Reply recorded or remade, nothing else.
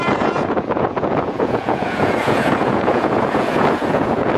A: remade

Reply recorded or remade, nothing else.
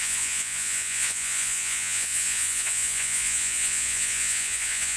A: remade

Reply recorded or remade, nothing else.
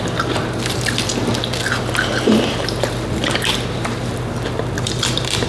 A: remade